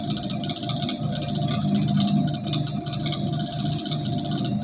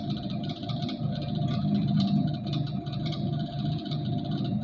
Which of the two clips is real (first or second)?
first